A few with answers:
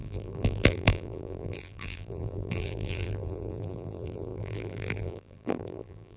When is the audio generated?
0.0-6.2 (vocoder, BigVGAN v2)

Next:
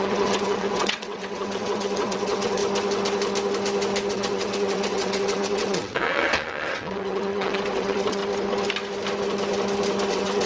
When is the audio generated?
0.0-2.6 (vocoder, WaveNeXt); 4.1-8.2; 10.1-10.5

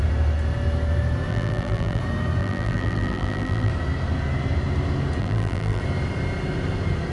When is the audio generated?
1.3-2.0 (vocoder, BigVGAN v2); 2.4-3.7; 5.2-5.8

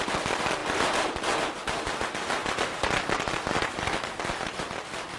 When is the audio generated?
none

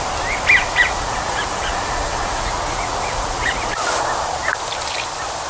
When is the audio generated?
0.7-4.0 (vocoder, Vocos)

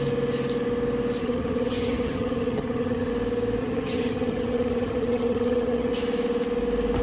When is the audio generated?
1.2-3.1 (vocoder, HiFi-GAN); 3.6-5.9

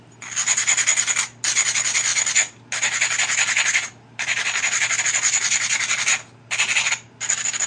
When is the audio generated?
none

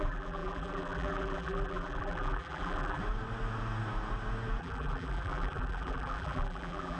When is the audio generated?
0.0-3.0 (vocoder, BigVGAN v2); 4.6-7.0